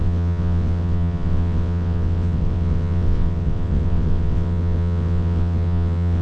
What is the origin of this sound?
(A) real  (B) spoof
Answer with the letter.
B